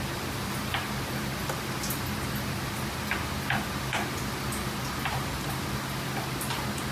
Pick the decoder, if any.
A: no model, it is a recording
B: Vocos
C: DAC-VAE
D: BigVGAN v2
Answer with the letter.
A